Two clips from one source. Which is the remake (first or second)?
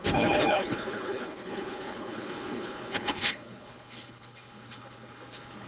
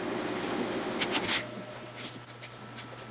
first